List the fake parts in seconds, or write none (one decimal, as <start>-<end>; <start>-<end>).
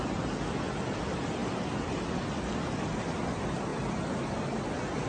none